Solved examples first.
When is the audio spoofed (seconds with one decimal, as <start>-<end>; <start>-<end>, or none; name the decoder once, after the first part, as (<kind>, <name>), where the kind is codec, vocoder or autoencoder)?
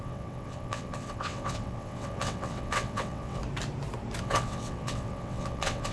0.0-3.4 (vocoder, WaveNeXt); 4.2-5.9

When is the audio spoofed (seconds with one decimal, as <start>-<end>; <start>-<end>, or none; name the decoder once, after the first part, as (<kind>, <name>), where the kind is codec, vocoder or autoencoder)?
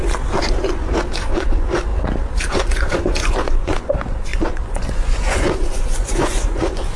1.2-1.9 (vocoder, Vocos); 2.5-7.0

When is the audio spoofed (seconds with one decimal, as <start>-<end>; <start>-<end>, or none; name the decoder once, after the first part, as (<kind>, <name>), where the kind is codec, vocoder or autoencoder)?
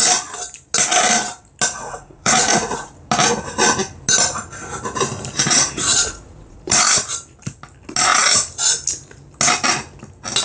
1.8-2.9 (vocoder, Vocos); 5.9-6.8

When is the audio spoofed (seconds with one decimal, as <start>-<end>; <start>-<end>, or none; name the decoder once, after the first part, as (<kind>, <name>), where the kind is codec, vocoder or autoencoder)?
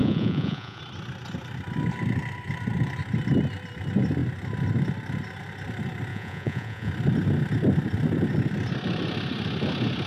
0.0-0.8 (vocoder, Vocos); 6.1-6.9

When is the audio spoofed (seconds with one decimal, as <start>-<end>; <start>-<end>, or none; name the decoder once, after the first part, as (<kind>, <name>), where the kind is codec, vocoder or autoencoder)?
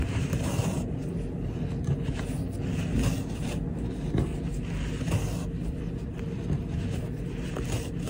0.0-1.0 (vocoder, BigVGAN v2); 5.7-8.1